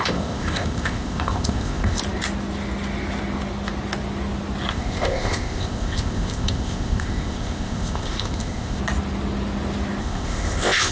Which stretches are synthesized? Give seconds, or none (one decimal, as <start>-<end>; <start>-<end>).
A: 0.0-2.0; 4.7-8.8; 10.0-10.9